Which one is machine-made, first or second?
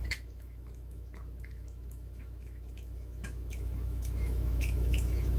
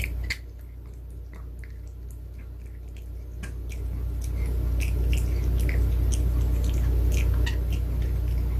first